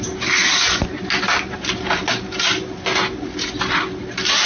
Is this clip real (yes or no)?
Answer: yes